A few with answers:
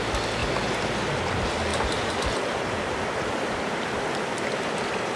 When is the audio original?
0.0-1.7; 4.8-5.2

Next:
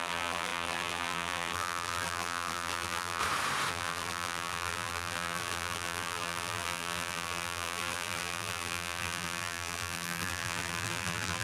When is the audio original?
3.2-3.7

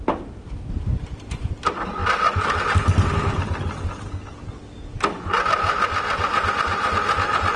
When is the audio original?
2.0-6.5

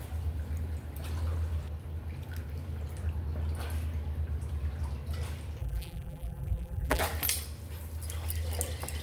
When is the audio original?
0.0-5.6; 7.0-9.0

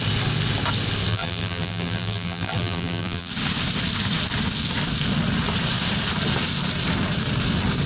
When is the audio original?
0.0-1.1; 3.3-7.9

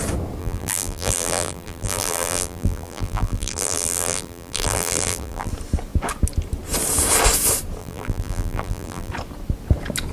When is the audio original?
0.0-0.4; 5.5-7.8; 9.1-10.1